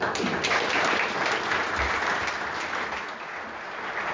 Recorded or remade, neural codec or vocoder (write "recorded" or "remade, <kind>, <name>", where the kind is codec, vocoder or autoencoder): recorded